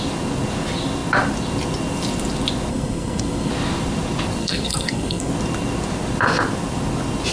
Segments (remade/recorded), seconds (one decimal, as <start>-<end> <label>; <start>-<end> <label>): 0.0-2.7 recorded; 2.7-3.5 remade; 3.5-4.4 recorded; 4.4-5.3 remade; 5.3-7.3 recorded